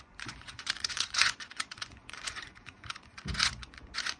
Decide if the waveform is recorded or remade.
remade